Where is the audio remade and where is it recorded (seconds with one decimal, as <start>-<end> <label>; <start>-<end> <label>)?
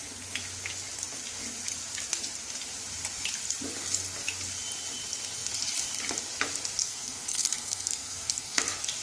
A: 0.0-6.8 recorded; 6.8-8.6 remade; 8.6-9.0 recorded